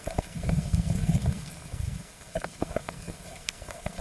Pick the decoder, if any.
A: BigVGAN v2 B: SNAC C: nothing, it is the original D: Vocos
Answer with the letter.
B